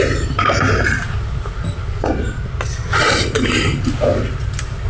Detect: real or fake real